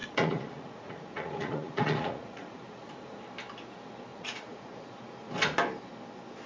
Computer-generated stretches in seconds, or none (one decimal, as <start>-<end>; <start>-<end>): 0.0-3.2; 4.1-5.3